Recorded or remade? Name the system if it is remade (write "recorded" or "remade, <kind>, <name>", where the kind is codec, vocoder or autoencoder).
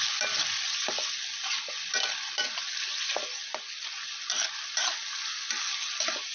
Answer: recorded